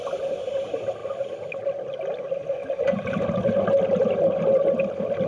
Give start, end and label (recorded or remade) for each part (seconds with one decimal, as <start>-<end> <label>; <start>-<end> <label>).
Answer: 0.0-5.3 recorded